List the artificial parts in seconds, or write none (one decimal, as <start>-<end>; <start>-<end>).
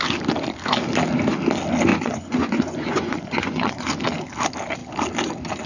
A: 1.9-3.9